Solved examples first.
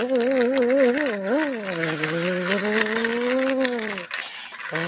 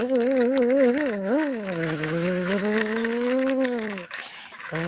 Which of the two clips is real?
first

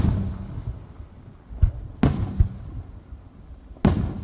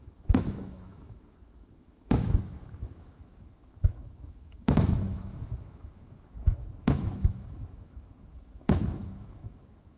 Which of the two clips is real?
first